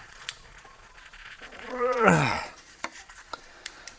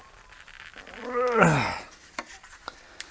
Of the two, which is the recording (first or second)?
second